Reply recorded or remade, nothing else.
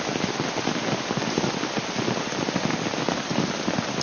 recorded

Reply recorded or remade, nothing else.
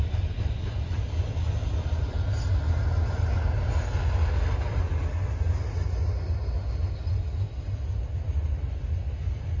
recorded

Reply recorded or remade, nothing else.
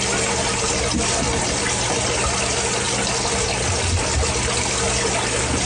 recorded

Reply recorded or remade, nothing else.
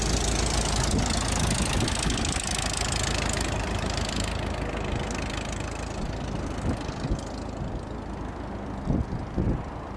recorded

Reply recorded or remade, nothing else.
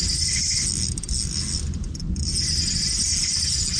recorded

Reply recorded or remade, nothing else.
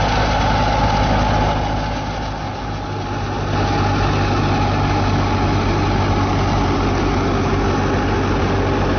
recorded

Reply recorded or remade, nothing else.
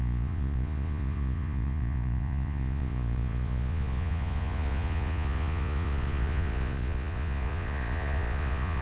remade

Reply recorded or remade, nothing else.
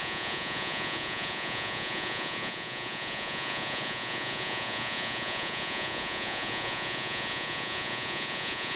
remade